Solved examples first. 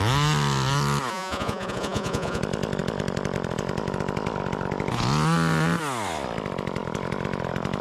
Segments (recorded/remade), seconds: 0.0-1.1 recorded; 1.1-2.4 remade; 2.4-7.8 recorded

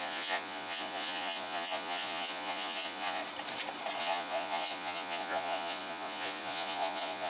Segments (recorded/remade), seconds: 0.0-3.2 remade; 3.2-4.0 recorded; 4.0-7.3 remade

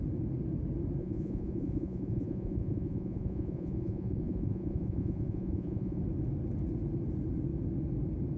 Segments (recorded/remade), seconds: 0.0-1.0 recorded; 1.0-6.0 remade; 6.0-8.4 recorded

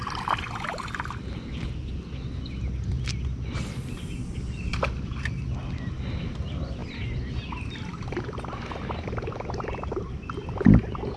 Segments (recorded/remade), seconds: 0.0-11.2 recorded

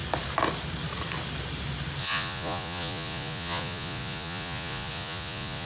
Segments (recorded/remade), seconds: 0.0-2.0 recorded; 2.0-5.6 remade

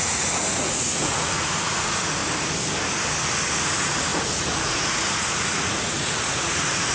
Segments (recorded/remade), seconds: 0.0-2.2 remade; 2.2-3.6 recorded; 3.6-6.9 remade

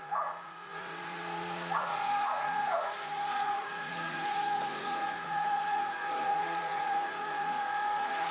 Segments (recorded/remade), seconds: 0.0-8.3 remade